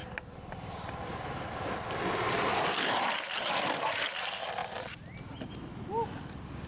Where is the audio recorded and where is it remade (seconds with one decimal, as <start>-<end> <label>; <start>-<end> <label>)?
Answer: 0.0-6.7 recorded